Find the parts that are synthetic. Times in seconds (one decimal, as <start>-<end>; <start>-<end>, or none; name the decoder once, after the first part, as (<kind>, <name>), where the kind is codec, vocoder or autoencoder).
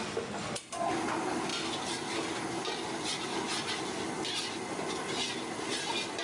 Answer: none